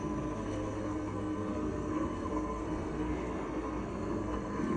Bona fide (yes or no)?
no